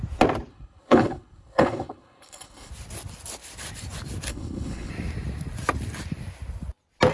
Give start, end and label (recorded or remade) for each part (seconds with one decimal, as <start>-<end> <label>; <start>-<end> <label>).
0.0-0.5 recorded; 0.5-2.7 remade; 2.7-4.3 recorded; 4.3-4.9 remade; 4.9-7.1 recorded